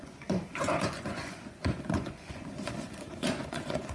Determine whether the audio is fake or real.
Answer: fake